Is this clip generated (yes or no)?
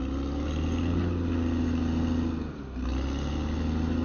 no